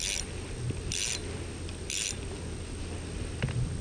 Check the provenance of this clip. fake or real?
real